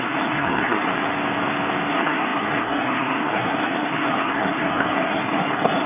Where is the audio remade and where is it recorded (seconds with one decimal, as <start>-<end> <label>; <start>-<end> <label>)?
0.0-0.9 remade; 0.9-1.9 recorded; 1.9-5.9 remade